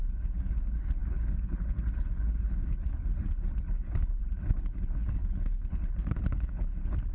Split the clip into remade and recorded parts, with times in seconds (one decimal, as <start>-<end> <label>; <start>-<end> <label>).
0.0-7.1 remade